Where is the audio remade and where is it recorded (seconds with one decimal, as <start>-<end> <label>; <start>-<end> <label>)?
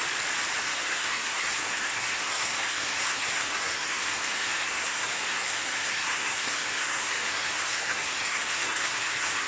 0.0-0.6 recorded; 0.6-9.5 remade